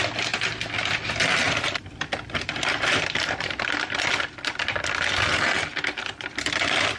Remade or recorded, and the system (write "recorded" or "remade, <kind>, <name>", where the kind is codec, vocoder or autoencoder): remade, vocoder, BigVGAN v2